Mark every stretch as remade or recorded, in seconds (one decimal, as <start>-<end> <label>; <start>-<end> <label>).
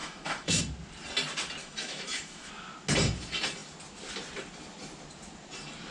0.0-0.6 remade; 0.6-1.6 recorded; 1.6-2.5 remade; 2.5-5.9 recorded